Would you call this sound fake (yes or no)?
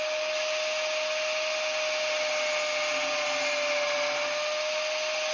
no